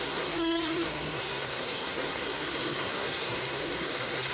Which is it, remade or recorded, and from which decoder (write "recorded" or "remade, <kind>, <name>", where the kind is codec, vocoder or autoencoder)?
remade, codec, SNAC